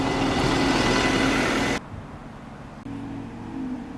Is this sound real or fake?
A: real